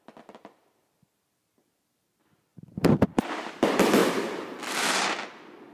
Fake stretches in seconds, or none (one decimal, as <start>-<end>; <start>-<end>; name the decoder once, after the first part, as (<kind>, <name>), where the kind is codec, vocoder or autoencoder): 0.0-4.0 (vocoder, BigVGAN v2); 4.7-5.7